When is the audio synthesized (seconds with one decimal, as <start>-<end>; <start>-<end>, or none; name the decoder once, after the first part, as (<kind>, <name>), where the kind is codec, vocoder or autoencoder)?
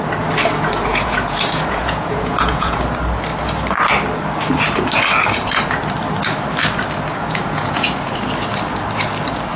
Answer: 0.9-2.8 (vocoder, Vocos); 7.1-8.1